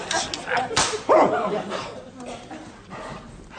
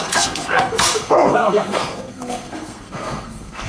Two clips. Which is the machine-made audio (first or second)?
second